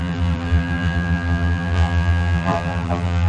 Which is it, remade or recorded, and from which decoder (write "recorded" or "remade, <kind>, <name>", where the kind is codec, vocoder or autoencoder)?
remade, vocoder, BigVGAN v2